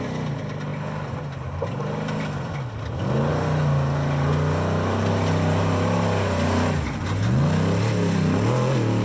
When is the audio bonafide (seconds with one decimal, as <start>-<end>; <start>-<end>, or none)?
0.0-9.0